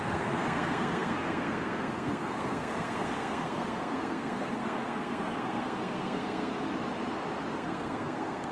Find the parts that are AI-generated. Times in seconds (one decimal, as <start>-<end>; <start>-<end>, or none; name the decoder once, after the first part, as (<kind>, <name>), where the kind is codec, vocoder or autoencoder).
0.0-6.5 (codec, SNAC); 7.5-8.5